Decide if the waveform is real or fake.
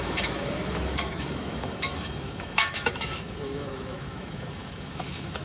fake